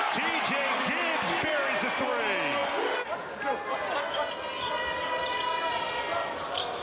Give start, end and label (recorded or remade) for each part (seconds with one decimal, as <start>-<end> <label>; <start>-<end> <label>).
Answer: 0.0-6.8 recorded